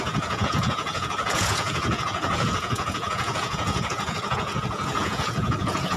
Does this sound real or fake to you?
fake